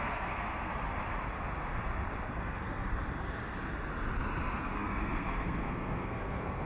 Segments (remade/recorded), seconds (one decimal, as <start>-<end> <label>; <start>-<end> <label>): 0.0-0.7 remade; 0.7-2.3 recorded; 2.3-2.9 remade; 2.9-4.6 recorded; 4.6-6.7 remade